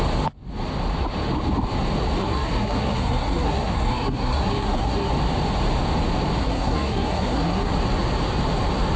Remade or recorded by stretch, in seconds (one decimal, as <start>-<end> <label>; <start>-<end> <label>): 0.0-2.2 recorded; 2.2-5.1 remade; 5.1-6.4 recorded; 6.4-7.7 remade; 7.7-9.0 recorded